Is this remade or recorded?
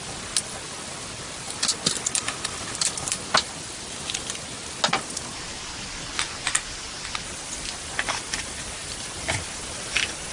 recorded